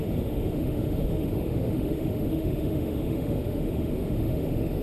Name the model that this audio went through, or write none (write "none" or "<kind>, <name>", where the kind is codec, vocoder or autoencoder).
autoencoder, DAC-VAE